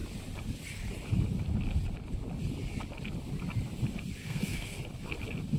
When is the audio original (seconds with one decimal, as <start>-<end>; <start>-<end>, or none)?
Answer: 0.0-4.2; 4.8-5.6